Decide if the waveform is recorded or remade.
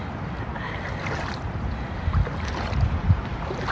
recorded